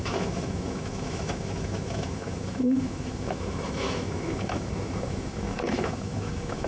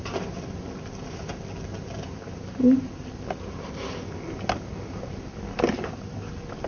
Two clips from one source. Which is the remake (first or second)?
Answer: first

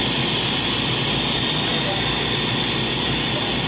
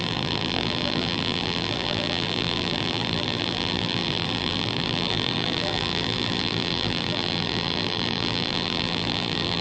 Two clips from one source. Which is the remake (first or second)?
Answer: second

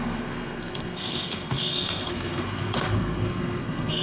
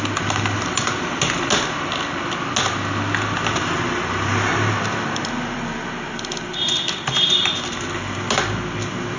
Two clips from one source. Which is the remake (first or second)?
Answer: first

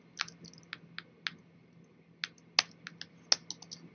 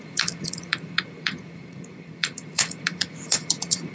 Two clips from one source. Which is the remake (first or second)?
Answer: second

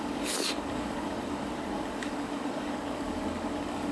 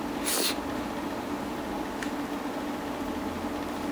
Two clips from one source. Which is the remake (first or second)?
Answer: first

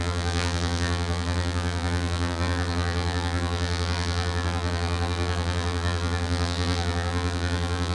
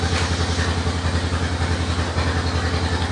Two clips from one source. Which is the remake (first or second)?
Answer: first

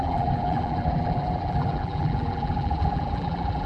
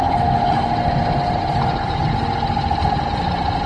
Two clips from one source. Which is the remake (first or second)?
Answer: first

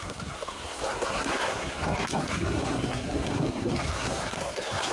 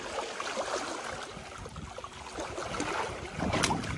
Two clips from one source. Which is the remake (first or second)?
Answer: first